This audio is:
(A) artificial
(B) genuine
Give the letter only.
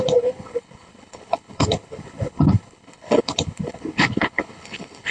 A